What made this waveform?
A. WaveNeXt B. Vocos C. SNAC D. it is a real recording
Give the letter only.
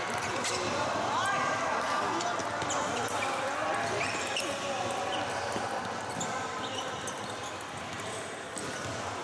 D